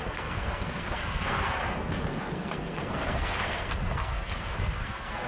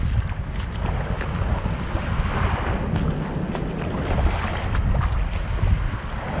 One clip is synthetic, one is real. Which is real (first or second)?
second